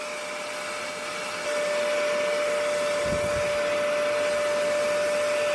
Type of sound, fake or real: real